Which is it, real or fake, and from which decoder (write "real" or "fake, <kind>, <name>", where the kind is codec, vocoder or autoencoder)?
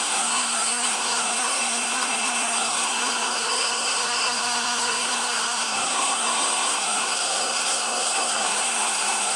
fake, codec, SNAC